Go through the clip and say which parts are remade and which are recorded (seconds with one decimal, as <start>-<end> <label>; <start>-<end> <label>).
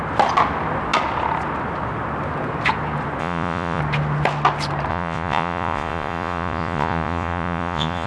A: 0.0-3.2 recorded; 3.2-3.8 remade; 3.8-4.9 recorded; 4.9-8.1 remade